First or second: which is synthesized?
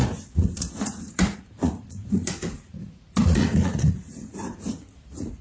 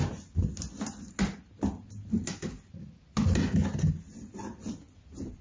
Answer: first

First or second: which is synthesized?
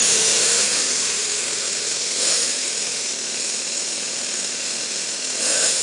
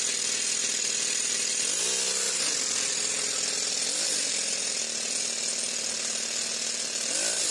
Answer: first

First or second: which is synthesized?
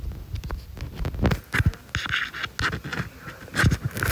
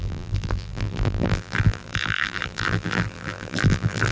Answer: second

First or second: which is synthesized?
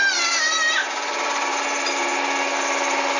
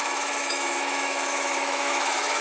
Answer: second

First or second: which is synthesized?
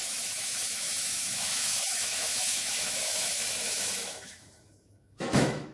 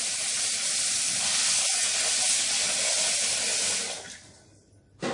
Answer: first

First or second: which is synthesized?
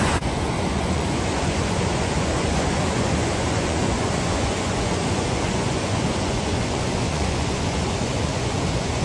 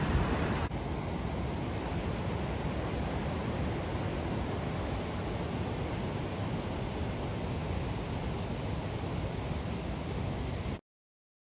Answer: first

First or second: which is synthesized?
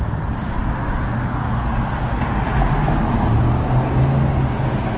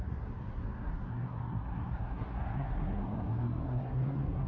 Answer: second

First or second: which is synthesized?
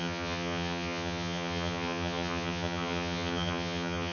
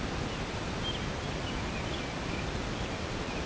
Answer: first